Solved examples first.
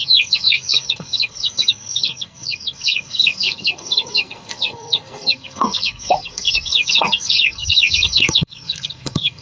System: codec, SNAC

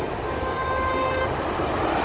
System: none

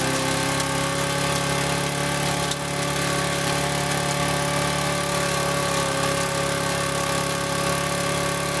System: none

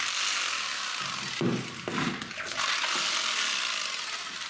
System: none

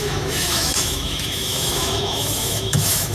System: autoencoder, DAC-VAE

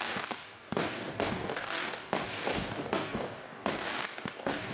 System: codec, DAC